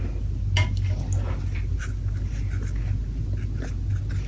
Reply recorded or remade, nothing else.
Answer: recorded